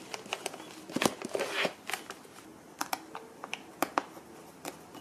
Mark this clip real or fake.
real